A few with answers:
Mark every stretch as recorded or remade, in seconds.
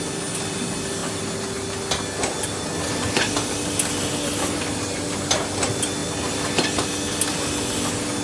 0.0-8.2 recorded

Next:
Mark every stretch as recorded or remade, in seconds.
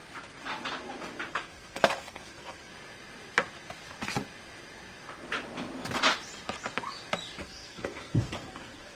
0.0-1.3 recorded; 1.3-2.7 remade; 2.7-7.4 recorded; 7.4-8.9 remade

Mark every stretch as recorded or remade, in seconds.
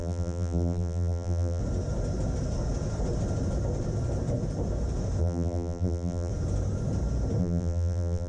0.0-1.6 remade; 1.6-5.2 recorded; 5.2-6.3 remade; 6.3-7.4 recorded; 7.4-8.3 remade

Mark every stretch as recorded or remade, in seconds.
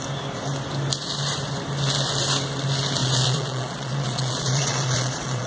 0.0-3.0 recorded; 3.0-5.5 remade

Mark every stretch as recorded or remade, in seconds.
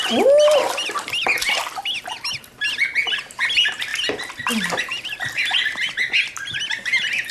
0.0-7.3 recorded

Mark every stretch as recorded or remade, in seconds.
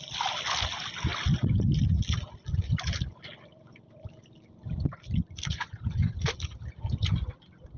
0.0-7.8 recorded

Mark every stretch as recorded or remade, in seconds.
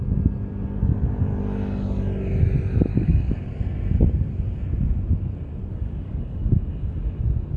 0.0-2.9 recorded; 2.9-3.6 remade; 3.6-5.7 recorded; 5.7-6.5 remade; 6.5-7.6 recorded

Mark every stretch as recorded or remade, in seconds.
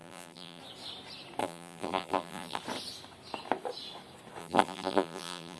0.0-0.6 remade; 0.6-1.4 recorded; 1.4-2.6 remade; 2.6-4.4 recorded; 4.4-5.6 remade